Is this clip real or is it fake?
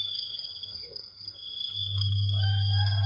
fake